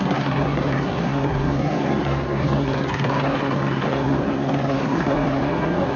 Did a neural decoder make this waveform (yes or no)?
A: yes